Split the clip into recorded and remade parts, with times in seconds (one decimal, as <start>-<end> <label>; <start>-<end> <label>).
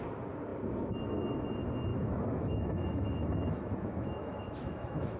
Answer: 0.0-1.9 recorded; 1.9-5.2 remade